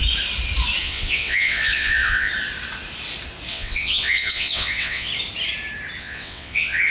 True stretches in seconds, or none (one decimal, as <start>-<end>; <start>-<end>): 0.0-0.8; 2.3-3.5; 5.1-6.0